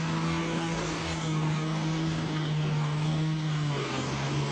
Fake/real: fake